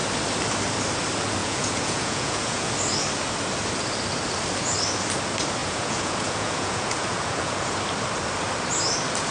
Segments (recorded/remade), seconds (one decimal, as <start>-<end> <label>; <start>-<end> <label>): 0.0-1.4 recorded; 1.4-2.7 remade; 2.7-5.6 recorded; 5.6-7.7 remade; 7.7-9.3 recorded